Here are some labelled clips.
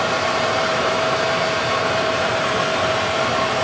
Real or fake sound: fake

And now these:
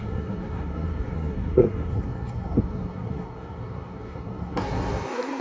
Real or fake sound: fake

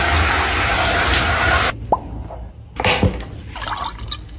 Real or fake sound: real